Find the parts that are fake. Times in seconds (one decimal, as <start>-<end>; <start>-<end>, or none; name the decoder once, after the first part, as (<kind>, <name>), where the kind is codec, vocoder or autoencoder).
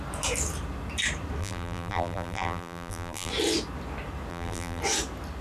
1.4-3.3 (vocoder, BigVGAN v2); 4.3-4.8